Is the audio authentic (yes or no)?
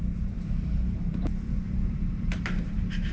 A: no